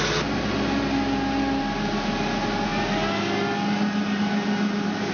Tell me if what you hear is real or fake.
real